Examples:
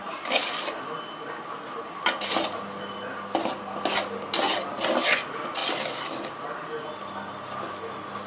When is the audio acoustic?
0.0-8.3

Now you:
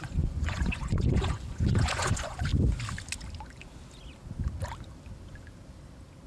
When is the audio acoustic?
2.5-6.3

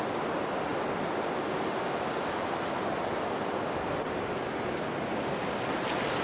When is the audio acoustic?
0.0-6.2

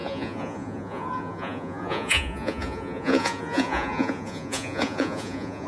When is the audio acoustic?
none

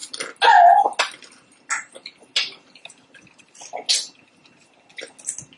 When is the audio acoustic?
0.0-5.6

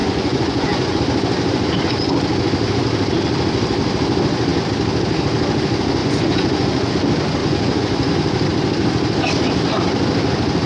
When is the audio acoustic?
1.0-6.0; 6.9-7.4; 8.1-10.7

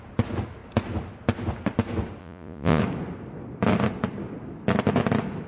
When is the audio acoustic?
0.0-2.2; 2.8-5.5